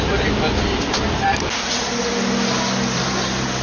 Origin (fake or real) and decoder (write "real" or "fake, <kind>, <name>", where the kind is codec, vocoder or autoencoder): real